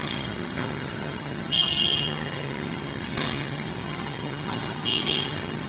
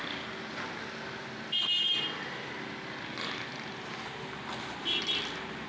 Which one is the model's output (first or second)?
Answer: first